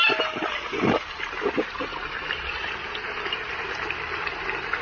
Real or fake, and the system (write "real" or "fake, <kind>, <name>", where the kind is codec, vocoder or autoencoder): real